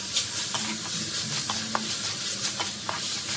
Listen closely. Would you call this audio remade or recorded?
recorded